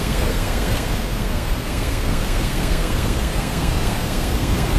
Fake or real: fake